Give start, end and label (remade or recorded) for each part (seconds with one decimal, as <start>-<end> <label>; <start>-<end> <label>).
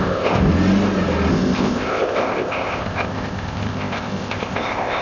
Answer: 0.0-0.5 remade; 0.5-1.3 recorded; 1.3-5.0 remade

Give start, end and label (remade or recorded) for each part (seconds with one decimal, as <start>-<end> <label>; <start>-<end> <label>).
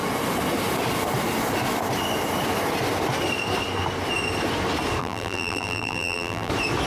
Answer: 0.0-5.0 recorded; 5.0-6.5 remade; 6.5-6.9 recorded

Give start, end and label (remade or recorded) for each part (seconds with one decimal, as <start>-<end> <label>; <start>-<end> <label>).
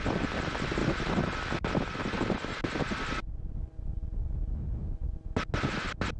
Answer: 0.0-6.2 recorded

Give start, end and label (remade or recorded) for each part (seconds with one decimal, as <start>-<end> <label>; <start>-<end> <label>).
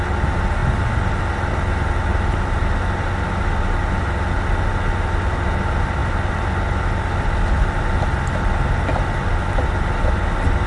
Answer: 0.0-10.7 recorded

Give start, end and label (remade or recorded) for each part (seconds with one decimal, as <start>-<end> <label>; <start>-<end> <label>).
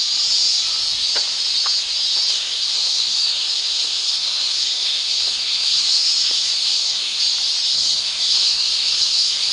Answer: 0.0-2.3 recorded; 2.3-7.2 remade; 7.2-7.7 recorded; 7.7-9.5 remade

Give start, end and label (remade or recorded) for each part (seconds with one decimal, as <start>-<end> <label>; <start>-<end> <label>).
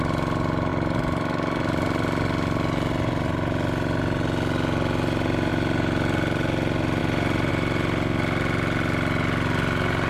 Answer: 0.0-10.1 recorded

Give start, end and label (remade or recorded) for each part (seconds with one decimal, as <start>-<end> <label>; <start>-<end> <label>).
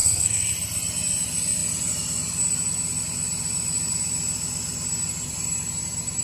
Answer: 0.0-0.5 remade; 0.5-6.2 recorded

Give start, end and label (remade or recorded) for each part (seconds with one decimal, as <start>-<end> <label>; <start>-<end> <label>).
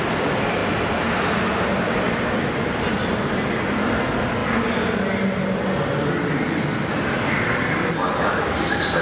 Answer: 0.0-9.0 recorded